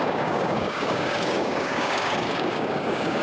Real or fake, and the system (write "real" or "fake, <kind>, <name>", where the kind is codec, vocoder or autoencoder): fake, codec, DAC